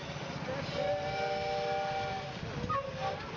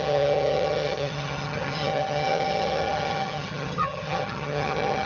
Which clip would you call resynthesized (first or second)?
second